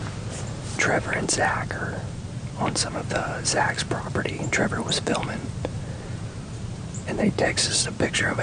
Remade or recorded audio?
remade